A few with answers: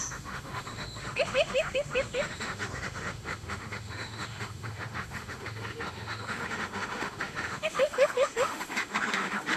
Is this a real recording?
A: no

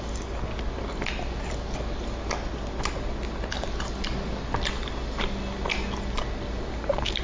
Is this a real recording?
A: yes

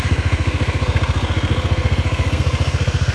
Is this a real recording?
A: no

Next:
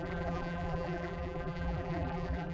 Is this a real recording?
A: no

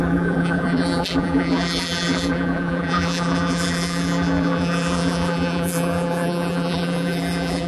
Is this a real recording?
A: no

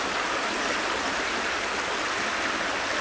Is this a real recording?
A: yes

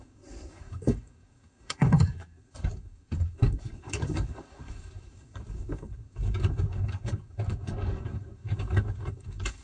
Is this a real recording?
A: no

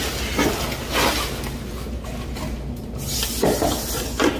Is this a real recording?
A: yes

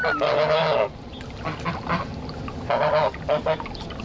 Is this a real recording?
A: yes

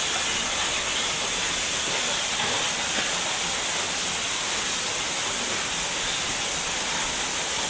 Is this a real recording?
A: yes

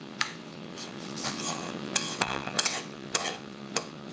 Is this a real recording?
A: no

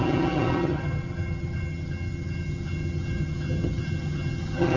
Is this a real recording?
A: no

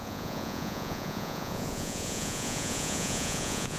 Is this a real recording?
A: no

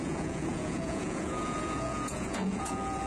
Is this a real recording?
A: no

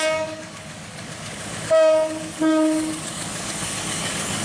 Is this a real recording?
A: no